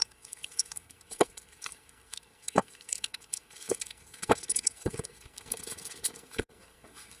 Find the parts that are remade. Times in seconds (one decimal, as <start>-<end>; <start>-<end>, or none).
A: 0.0-7.2